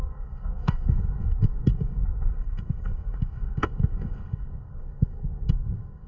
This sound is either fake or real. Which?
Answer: fake